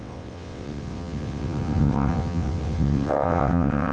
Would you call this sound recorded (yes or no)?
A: no